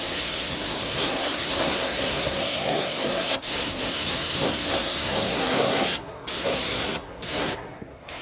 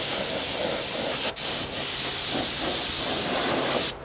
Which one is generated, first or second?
first